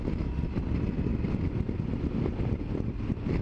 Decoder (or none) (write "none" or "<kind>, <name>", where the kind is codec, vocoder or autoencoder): none